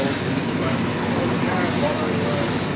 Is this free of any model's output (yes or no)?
yes